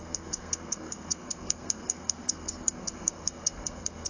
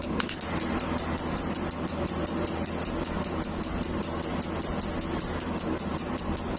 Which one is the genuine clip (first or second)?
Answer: second